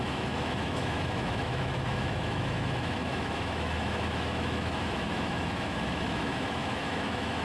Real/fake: fake